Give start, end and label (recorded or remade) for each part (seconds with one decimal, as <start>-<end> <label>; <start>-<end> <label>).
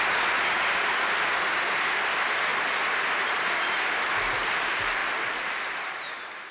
0.0-6.5 recorded